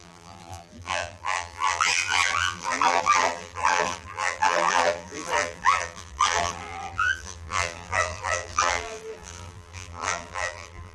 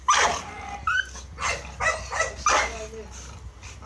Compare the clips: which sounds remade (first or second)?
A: first